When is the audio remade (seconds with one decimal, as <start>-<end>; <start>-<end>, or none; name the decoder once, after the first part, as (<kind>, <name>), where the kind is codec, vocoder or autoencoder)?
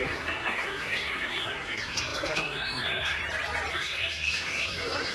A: 0.0-3.2 (codec, SNAC); 3.7-5.1